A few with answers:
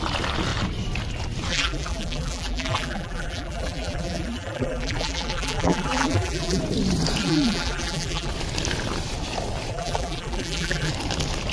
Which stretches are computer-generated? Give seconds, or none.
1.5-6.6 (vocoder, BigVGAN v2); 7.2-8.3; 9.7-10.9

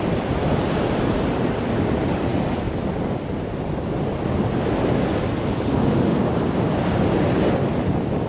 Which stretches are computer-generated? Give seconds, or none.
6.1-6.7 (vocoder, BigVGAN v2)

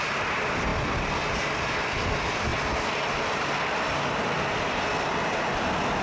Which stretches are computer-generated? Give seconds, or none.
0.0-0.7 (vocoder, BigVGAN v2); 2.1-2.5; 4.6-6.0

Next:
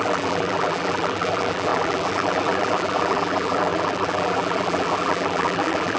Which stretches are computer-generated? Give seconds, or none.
0.0-6.0 (vocoder, BigVGAN v2)

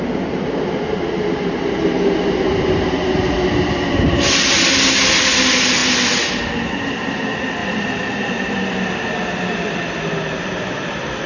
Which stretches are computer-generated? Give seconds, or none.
7.6-10.0 (vocoder, BigVGAN v2)

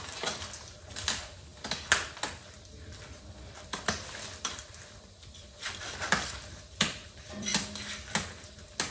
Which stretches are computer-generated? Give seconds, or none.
0.0-1.5 (vocoder, BigVGAN v2); 3.7-7.5

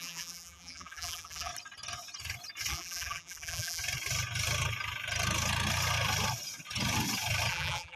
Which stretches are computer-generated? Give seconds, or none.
0.0-1.5 (vocoder, BigVGAN v2); 2.7-3.8; 7.5-8.0

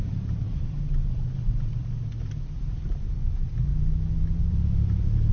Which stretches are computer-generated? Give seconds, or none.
0.0-3.7 (vocoder, BigVGAN v2); 4.5-5.3